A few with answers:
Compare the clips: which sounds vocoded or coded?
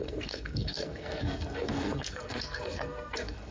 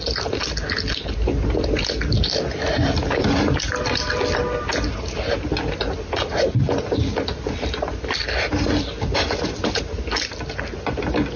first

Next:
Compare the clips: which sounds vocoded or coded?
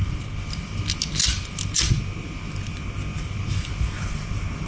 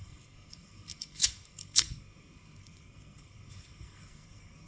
second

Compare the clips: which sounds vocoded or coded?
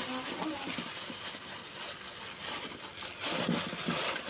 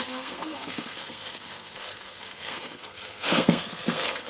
second